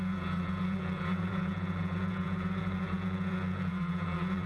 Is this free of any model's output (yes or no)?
no